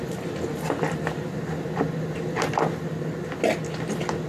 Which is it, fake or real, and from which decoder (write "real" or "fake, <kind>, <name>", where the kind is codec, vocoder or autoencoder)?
real